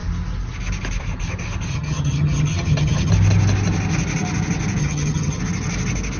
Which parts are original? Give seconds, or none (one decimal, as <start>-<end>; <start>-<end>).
0.0-1.7; 3.1-4.8; 5.4-6.2